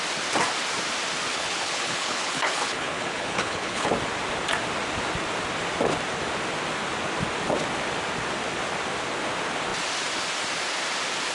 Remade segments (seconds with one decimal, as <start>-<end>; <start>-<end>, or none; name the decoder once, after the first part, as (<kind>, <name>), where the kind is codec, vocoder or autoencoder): 1.3-3.9 (codec, HILCodec)